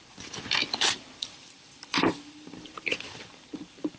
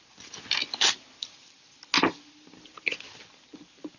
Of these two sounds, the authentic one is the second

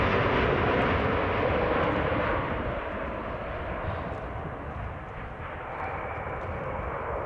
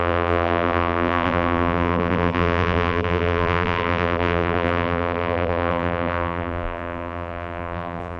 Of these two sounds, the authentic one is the first